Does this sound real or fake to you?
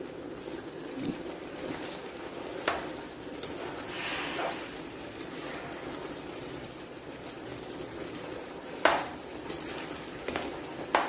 real